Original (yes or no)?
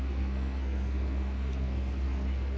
no